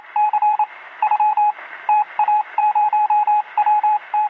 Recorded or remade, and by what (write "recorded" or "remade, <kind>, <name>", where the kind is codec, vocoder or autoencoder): remade, vocoder, BigVGAN v2